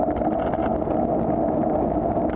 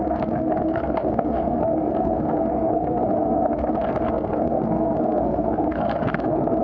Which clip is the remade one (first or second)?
second